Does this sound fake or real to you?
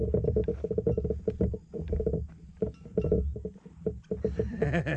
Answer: real